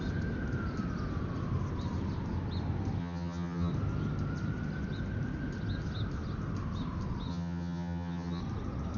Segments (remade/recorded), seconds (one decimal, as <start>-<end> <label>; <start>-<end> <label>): 0.0-3.0 recorded; 3.0-3.7 remade; 3.7-7.3 recorded; 7.3-8.4 remade; 8.4-9.0 recorded